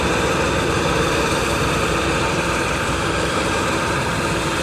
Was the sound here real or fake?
fake